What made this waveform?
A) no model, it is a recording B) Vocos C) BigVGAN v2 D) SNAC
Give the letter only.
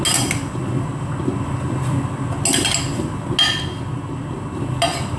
A